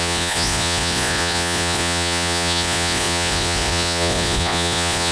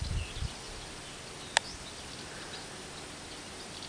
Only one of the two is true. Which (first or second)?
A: second